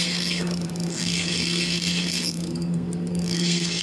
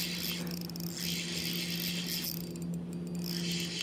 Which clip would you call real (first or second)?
second